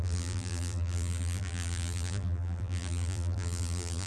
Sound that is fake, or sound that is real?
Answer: fake